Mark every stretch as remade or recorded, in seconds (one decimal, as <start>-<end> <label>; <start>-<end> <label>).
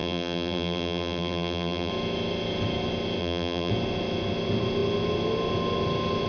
0.0-1.9 remade; 1.9-3.2 recorded; 3.2-3.7 remade; 3.7-6.3 recorded